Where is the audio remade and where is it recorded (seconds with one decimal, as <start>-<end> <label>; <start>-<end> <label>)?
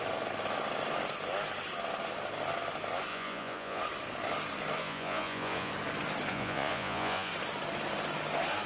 0.0-3.1 recorded; 3.1-3.8 remade; 3.8-4.8 recorded; 4.8-5.7 remade; 5.7-6.3 recorded; 6.3-7.3 remade; 7.3-8.7 recorded